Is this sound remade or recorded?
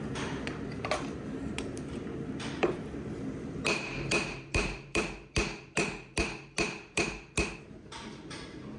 remade